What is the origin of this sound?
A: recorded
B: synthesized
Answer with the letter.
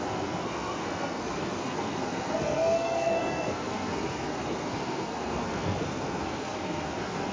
B